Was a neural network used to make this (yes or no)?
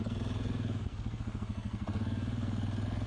yes